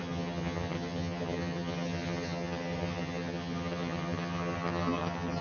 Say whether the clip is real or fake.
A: fake